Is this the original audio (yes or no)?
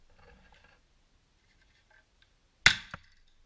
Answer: yes